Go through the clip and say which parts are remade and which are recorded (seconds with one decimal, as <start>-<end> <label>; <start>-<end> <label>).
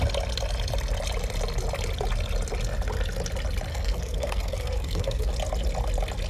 0.0-3.7 recorded; 3.7-5.3 remade; 5.3-6.3 recorded